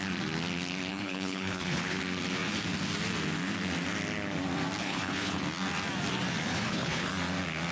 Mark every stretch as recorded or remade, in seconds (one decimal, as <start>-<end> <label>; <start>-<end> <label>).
0.0-0.9 recorded; 0.9-2.0 remade; 2.0-4.8 recorded; 4.8-5.4 remade; 5.4-6.5 recorded; 6.5-7.1 remade; 7.1-7.7 recorded